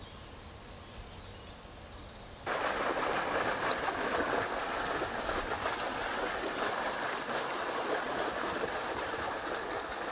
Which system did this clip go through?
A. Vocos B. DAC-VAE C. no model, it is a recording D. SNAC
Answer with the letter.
C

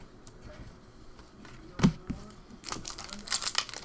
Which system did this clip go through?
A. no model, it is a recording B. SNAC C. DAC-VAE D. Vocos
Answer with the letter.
A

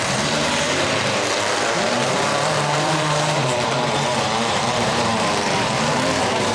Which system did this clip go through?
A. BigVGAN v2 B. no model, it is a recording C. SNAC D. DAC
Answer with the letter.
A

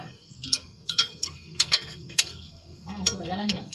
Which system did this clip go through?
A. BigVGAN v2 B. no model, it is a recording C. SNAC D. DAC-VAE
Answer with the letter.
C